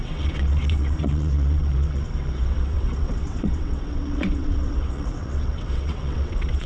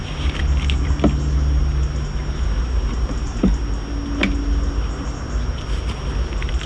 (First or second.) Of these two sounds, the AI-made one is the first